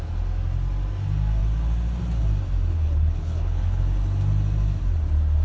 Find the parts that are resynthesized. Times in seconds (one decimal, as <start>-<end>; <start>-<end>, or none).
2.7-3.8